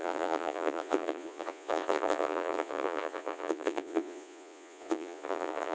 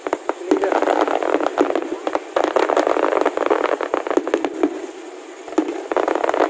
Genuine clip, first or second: second